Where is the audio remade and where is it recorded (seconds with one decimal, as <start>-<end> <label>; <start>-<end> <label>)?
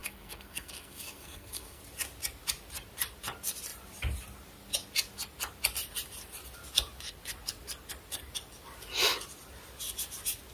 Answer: 0.0-1.8 remade; 1.8-10.5 recorded